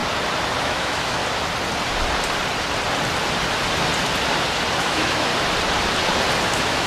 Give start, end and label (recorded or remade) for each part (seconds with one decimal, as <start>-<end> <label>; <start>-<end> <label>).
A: 0.0-0.6 recorded; 0.6-1.2 remade; 1.2-4.8 recorded; 4.8-5.3 remade; 5.3-6.4 recorded; 6.4-6.9 remade